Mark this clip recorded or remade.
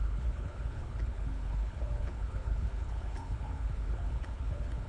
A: remade